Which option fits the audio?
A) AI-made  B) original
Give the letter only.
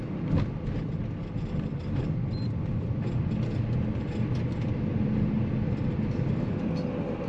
B